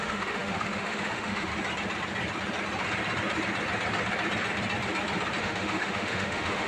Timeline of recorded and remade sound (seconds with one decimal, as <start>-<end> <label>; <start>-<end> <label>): 0.0-1.5 remade; 1.5-5.4 recorded; 5.4-6.7 remade